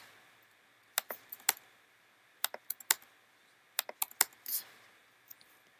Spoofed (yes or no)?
no